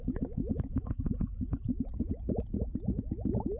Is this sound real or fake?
real